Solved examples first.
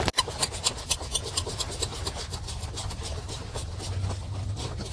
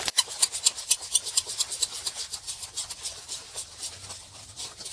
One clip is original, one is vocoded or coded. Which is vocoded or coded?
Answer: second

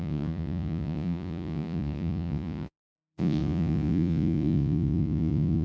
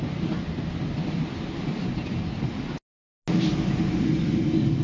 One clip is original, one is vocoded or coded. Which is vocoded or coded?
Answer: first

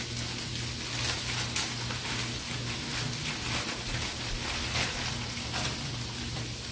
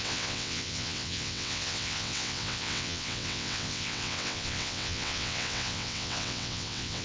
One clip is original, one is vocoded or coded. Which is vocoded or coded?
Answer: second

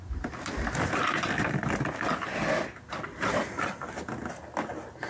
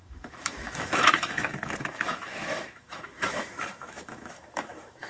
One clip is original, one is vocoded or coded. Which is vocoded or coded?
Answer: second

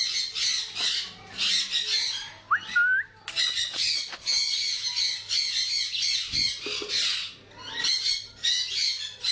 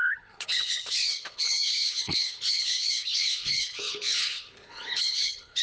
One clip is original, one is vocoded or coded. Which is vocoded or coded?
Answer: second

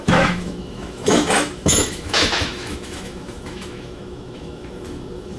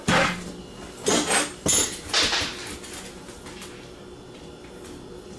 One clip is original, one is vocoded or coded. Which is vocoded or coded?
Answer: first